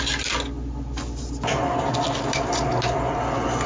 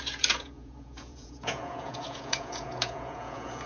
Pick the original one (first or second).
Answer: first